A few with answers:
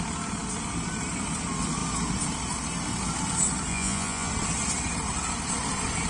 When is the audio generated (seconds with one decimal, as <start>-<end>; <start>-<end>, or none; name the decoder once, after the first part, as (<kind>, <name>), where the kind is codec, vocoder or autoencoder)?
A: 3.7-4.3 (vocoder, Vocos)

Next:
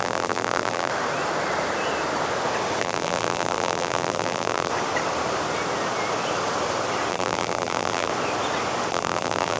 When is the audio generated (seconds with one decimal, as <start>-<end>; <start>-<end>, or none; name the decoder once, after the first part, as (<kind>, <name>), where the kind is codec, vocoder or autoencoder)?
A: 0.0-0.9 (vocoder, BigVGAN v2); 2.8-4.7; 7.1-8.1; 8.9-9.6

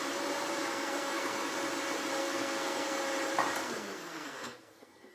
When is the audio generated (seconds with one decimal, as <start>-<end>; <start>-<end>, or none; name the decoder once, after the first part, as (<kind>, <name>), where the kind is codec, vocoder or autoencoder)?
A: 0.5-1.5 (codec, SNAC); 2.2-3.0; 3.6-5.1